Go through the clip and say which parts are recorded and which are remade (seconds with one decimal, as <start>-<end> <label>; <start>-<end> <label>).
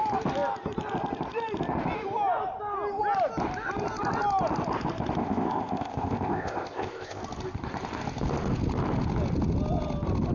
0.0-5.2 recorded; 5.2-7.2 remade; 7.2-10.3 recorded